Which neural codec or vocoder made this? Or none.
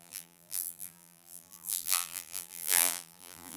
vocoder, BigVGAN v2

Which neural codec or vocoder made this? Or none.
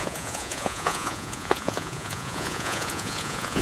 vocoder, Vocos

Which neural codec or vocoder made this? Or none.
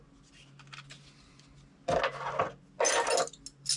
none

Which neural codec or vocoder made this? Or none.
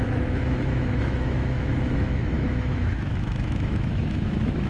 autoencoder, DAC-VAE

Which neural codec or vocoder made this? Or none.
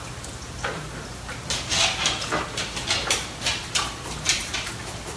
none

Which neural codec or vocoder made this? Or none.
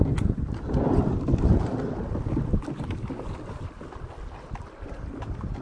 none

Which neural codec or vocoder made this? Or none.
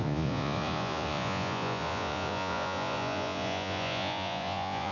vocoder, Vocos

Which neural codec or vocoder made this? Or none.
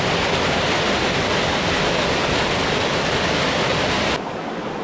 none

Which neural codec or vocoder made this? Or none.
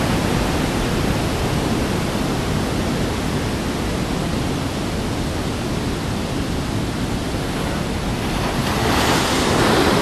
none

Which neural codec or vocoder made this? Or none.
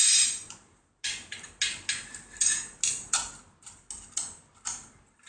none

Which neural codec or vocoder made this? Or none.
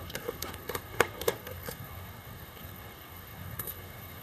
codec, SNAC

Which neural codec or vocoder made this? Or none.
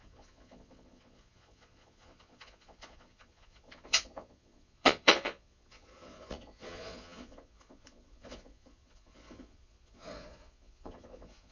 vocoder, Vocos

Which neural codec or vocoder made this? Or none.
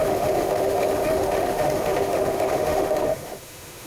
autoencoder, DAC-VAE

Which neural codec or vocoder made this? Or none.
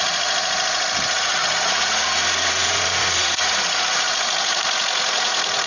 vocoder, Vocos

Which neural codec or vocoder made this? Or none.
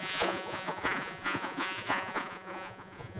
vocoder, Vocos